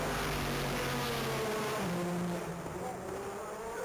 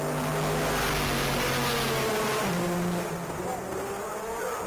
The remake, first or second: first